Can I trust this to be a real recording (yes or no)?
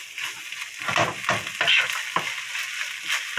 yes